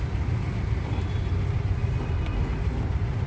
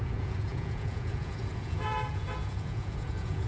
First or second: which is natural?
first